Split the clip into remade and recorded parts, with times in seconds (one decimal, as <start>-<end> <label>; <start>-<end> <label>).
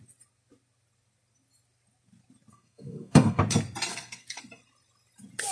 0.0-2.5 recorded; 2.5-3.4 remade; 3.4-3.9 recorded; 3.9-4.4 remade; 4.4-5.5 recorded